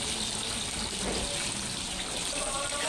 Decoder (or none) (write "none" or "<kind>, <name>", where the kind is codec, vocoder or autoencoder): none